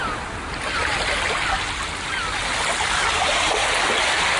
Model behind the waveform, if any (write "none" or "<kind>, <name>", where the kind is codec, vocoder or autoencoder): none